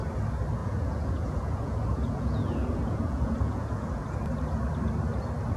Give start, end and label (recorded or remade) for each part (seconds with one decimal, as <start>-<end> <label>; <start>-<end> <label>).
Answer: 0.0-0.6 recorded; 0.6-4.0 remade; 4.0-5.6 recorded